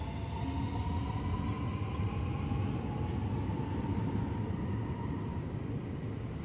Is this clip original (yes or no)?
yes